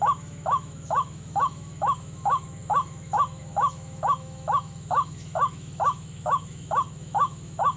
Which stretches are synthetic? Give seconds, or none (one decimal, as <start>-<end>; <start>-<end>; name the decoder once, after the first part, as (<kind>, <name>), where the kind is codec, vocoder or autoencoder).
0.0-7.8 (autoencoder, DAC-VAE)